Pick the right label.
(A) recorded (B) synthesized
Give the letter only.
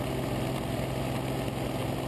A